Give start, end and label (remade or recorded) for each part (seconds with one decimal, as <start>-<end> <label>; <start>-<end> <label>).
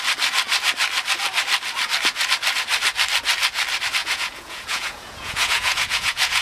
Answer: 0.0-4.0 recorded; 4.0-6.4 remade